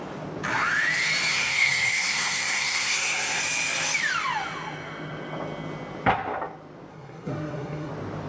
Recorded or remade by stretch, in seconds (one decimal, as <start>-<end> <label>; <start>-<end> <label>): 0.0-1.3 recorded; 1.3-3.4 remade; 3.4-6.9 recorded; 6.9-7.9 remade; 7.9-8.3 recorded